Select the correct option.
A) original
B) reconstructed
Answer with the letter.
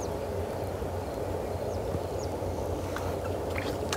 A